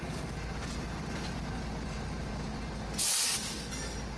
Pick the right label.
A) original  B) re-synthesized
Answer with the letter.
A